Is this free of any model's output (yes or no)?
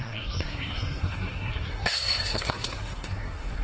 no